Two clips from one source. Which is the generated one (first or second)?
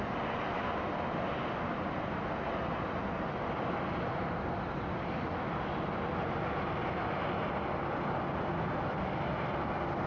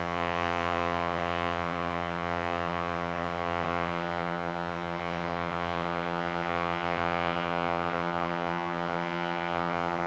second